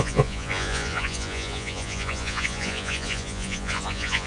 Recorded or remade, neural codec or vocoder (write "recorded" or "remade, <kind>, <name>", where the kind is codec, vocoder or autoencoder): remade, vocoder, Vocos